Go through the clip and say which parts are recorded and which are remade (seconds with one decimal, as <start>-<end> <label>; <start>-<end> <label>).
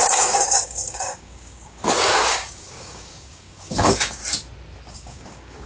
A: 0.0-4.2 remade; 4.2-4.9 recorded; 4.9-5.7 remade